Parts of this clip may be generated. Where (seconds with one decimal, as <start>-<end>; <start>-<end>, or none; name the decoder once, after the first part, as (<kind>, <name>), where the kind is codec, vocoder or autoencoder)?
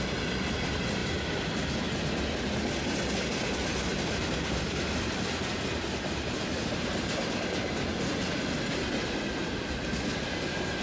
none